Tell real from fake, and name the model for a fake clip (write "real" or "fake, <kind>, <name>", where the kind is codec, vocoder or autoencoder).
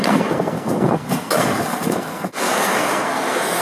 fake, codec, SNAC